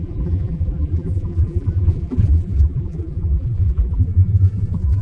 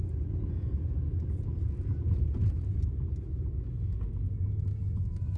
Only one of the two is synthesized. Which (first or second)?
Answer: first